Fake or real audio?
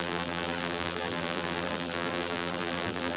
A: fake